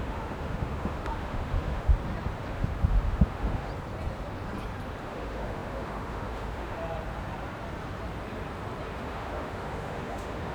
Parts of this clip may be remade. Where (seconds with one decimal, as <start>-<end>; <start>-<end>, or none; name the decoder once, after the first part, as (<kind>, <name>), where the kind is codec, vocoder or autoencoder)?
0.0-1.9 (autoencoder, DAC-VAE); 2.5-3.7; 5.0-6.8; 8.9-10.5